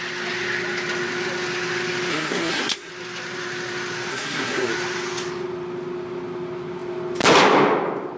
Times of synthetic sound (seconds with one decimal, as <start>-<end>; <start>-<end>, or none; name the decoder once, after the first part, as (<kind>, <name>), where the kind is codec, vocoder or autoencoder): 2.1-2.9 (codec, SNAC); 4.1-4.7